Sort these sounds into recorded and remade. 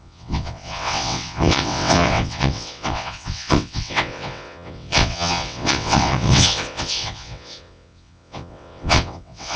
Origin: remade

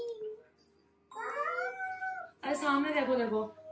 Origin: recorded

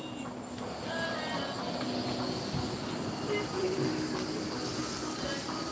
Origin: recorded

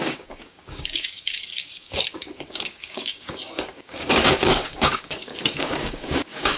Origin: remade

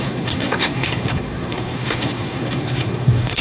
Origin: remade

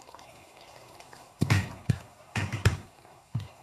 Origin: remade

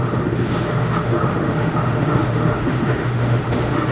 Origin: remade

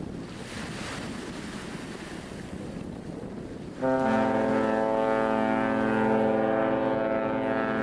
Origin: recorded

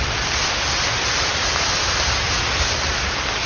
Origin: recorded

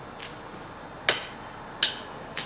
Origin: recorded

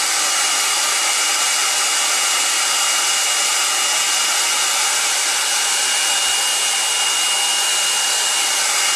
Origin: recorded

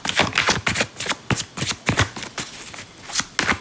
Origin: recorded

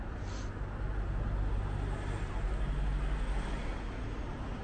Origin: recorded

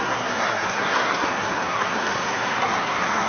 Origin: remade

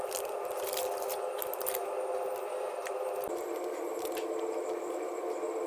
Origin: recorded